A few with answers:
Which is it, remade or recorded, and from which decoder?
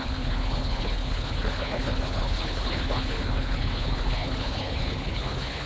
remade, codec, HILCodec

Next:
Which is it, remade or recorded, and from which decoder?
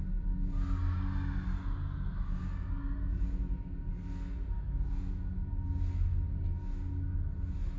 recorded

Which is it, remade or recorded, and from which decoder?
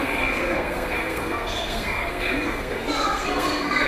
remade, codec, SNAC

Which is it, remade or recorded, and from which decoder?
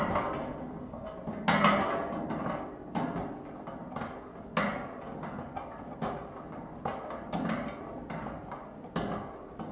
recorded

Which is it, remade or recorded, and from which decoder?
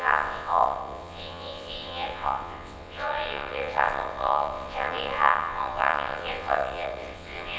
remade, vocoder, WaveNeXt